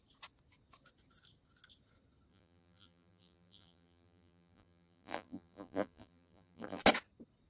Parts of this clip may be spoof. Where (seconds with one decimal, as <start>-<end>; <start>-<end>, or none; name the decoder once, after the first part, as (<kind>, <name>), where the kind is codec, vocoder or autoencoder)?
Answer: 2.3-6.8 (vocoder, BigVGAN v2)